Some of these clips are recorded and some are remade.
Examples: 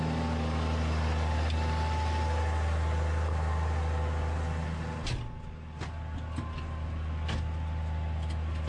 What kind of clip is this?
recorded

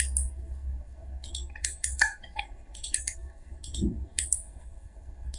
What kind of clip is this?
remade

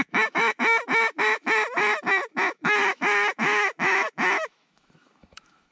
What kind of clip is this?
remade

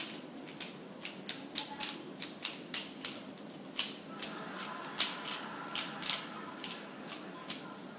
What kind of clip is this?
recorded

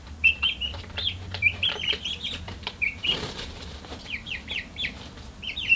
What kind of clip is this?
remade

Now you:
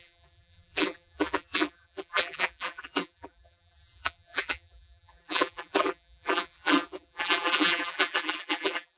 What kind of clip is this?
remade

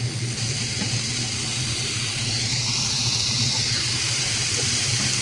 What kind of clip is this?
remade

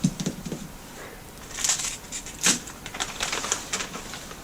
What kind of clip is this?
remade